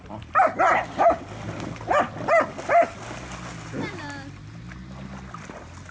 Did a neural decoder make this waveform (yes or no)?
no